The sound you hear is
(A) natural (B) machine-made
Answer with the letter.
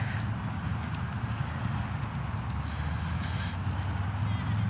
A